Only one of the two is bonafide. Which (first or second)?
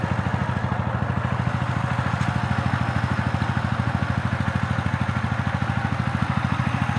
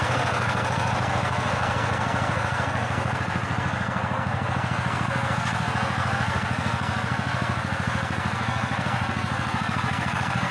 first